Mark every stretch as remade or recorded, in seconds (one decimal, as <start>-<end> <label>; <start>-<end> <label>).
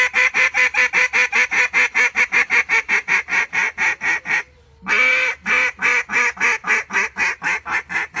0.0-1.0 remade; 1.0-2.2 recorded; 2.2-3.3 remade; 3.3-8.2 recorded